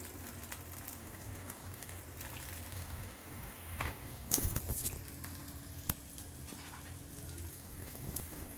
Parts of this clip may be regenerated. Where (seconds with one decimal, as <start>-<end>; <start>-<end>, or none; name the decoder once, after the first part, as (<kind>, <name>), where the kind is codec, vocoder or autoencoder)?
1.0-2.0 (codec, DAC); 2.7-4.6; 7.5-8.6